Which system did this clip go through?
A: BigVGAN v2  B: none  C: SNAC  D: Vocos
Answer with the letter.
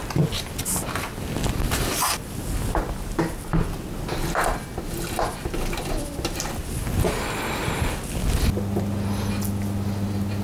B